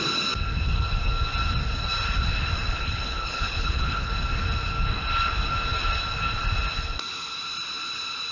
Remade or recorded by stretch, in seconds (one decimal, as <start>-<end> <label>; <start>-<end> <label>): 0.0-2.7 recorded; 2.7-4.1 remade; 4.1-8.3 recorded